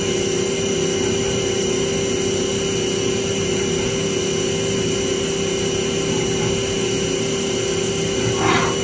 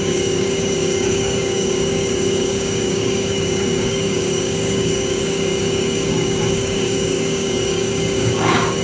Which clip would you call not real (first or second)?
second